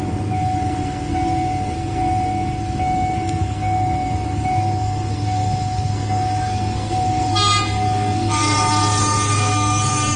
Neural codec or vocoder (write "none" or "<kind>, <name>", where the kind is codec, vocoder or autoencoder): codec, SNAC